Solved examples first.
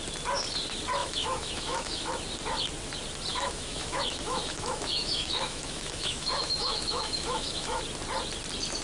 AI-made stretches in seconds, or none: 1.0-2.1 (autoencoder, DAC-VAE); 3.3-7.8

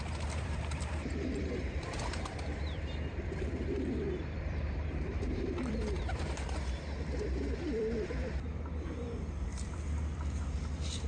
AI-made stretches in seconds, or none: 0.0-11.1 (vocoder, BigVGAN v2)

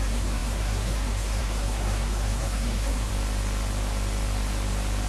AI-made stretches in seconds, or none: 0.0-3.1 (codec, SNAC)